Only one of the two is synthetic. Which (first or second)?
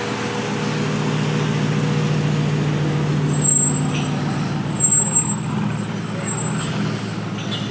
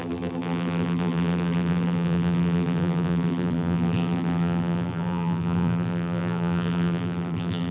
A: second